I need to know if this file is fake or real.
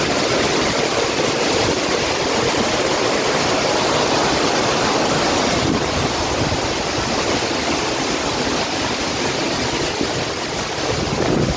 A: real